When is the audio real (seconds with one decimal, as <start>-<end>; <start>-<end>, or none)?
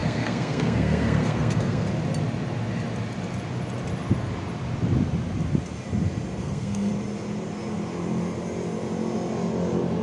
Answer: 1.9-6.4; 6.9-10.0